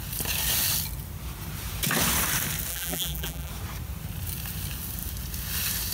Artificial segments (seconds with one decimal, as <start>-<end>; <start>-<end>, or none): 2.7-3.5